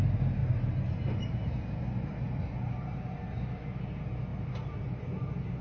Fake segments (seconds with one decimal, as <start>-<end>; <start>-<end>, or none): none